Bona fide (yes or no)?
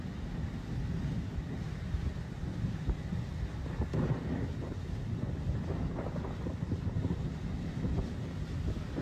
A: yes